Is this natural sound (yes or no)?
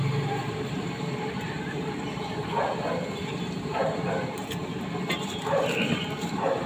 no